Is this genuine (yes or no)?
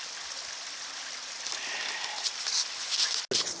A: yes